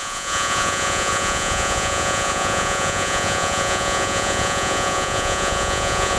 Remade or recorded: remade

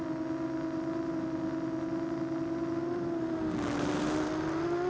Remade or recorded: recorded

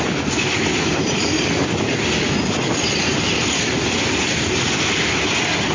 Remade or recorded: recorded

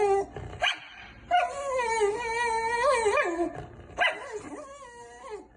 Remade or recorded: recorded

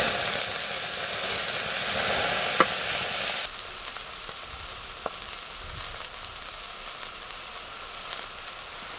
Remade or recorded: recorded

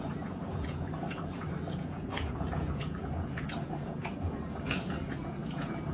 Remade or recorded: remade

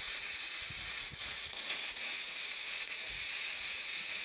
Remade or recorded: remade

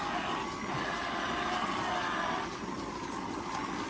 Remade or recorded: recorded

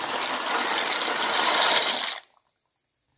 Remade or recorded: recorded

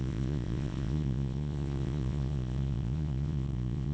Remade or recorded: remade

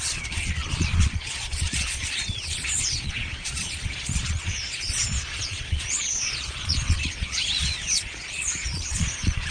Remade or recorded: remade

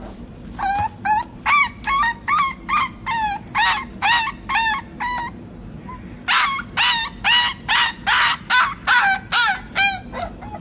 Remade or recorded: recorded